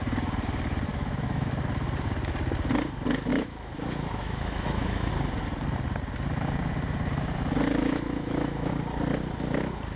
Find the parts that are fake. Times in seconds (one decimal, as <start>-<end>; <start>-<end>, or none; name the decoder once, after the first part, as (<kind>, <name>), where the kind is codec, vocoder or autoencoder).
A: 0.9-1.5 (autoencoder, DAC-VAE); 3.3-5.1; 7.8-8.7